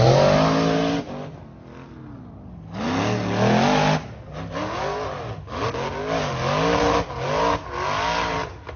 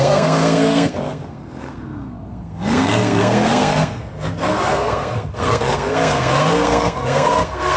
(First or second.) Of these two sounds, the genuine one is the first